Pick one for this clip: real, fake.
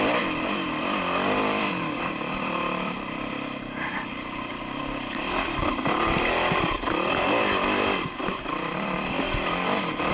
fake